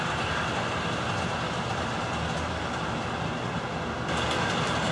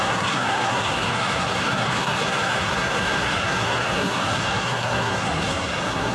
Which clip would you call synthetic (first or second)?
second